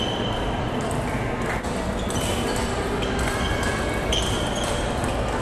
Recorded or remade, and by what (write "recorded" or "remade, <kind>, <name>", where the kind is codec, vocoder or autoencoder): recorded